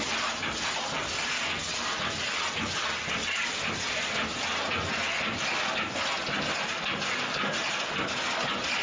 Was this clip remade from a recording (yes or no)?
no